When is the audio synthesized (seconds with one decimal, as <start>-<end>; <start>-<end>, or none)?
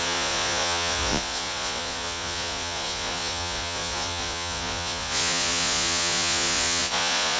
0.0-7.4